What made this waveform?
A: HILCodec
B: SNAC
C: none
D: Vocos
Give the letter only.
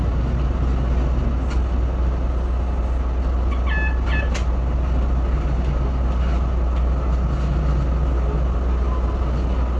C